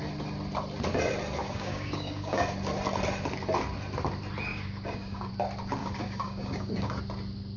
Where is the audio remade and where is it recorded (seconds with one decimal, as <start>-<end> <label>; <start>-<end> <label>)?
0.0-1.4 recorded; 1.4-2.4 remade; 2.4-4.5 recorded; 4.5-5.3 remade; 5.3-5.8 recorded; 5.8-7.0 remade; 7.0-7.6 recorded